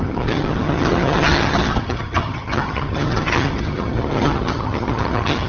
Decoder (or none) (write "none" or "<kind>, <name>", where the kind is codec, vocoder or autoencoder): vocoder, HiFi-GAN